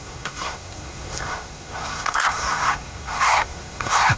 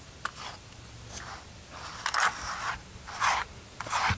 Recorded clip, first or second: second